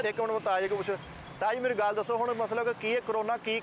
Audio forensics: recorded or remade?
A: recorded